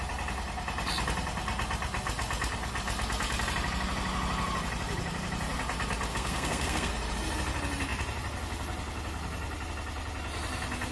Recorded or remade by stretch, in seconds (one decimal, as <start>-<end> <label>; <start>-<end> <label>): 0.0-6.1 recorded; 6.1-6.9 remade; 6.9-10.9 recorded

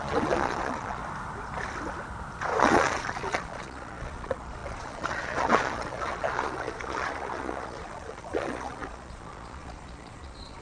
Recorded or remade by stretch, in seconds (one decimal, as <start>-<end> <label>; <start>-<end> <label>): 0.0-1.0 remade; 1.0-2.6 recorded; 2.6-10.6 remade

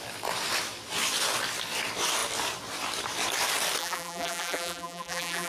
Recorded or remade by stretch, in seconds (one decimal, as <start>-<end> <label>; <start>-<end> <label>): 0.0-3.8 recorded; 3.8-5.5 remade

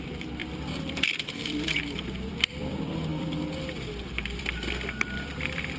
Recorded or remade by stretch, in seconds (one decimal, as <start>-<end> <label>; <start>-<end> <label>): 0.0-5.8 remade

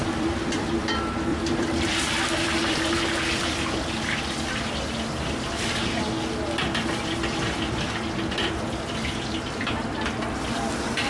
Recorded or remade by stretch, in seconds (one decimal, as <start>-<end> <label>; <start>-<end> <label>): 0.0-0.7 remade; 0.7-1.3 recorded; 1.3-2.8 remade; 2.8-11.1 recorded

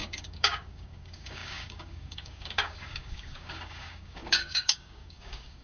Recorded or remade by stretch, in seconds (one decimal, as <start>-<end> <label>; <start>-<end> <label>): 0.0-5.6 remade

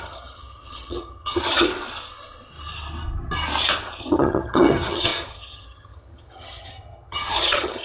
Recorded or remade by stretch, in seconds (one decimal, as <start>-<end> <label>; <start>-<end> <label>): 0.0-1.7 remade; 1.7-4.0 recorded; 4.0-7.8 remade